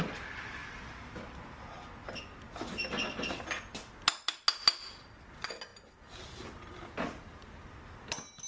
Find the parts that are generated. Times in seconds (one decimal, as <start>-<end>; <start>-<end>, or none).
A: none